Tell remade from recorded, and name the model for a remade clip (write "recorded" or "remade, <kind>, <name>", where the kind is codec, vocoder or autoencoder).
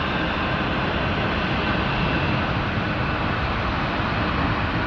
recorded